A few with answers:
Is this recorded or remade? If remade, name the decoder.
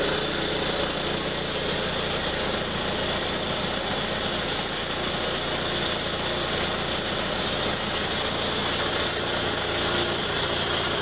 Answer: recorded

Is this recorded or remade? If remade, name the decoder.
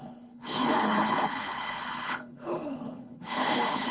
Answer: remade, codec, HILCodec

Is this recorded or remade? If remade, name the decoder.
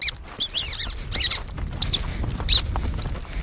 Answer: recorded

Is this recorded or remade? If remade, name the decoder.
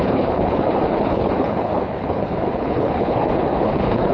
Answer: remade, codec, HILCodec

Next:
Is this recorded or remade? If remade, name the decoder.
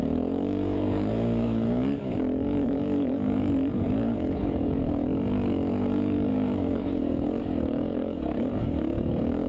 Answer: remade, codec, DAC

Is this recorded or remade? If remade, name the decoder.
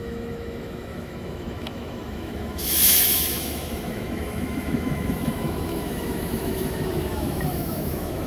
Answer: remade, autoencoder, DAC-VAE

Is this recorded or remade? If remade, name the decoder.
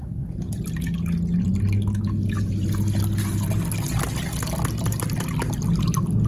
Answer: recorded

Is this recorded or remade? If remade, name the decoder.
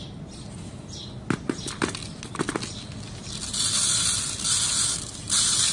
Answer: recorded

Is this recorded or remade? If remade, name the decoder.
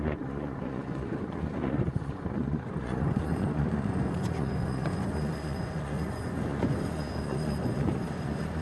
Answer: remade, vocoder, Vocos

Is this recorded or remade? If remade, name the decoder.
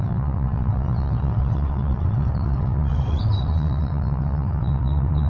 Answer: remade, vocoder, WaveNeXt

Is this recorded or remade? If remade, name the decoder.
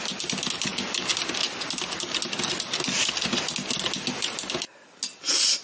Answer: recorded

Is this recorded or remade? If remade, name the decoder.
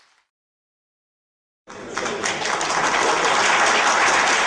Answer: remade, vocoder, BigVGAN v2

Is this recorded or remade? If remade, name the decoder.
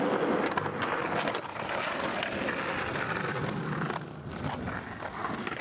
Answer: recorded